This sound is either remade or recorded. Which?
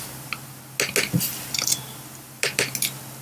recorded